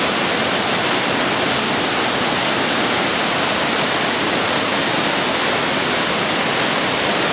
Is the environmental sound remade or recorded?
recorded